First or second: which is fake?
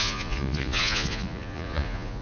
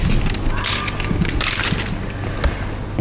first